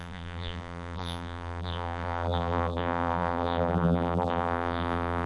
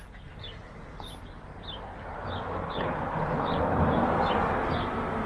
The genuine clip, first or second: second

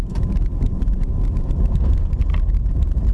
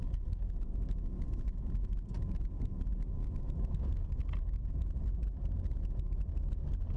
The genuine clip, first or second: second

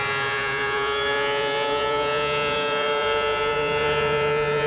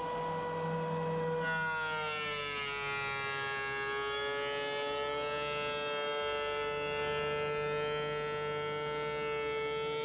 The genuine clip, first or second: second